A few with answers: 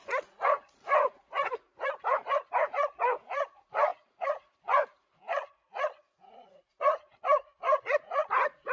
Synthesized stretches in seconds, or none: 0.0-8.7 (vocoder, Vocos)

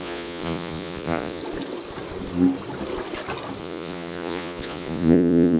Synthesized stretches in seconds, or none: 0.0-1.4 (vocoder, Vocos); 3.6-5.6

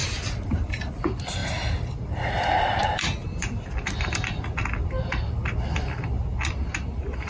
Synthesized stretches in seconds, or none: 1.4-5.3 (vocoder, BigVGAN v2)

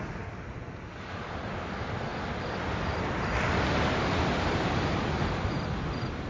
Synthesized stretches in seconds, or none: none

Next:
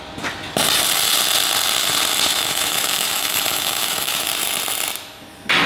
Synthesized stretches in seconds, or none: 2.3-4.3 (autoencoder, DAC-VAE)